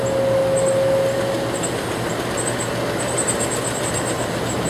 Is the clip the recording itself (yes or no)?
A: yes